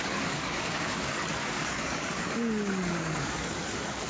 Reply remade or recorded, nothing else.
remade